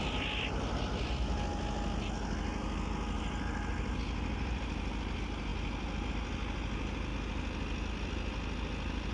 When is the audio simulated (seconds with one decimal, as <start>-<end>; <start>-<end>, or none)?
none